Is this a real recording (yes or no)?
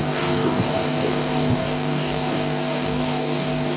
no